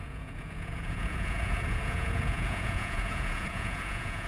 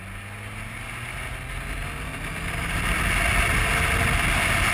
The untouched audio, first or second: second